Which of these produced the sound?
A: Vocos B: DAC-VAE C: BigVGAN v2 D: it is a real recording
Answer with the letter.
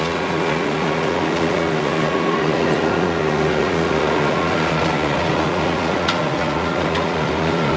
A